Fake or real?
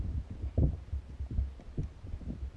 real